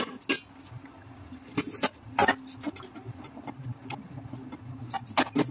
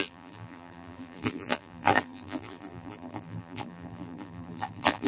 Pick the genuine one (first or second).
first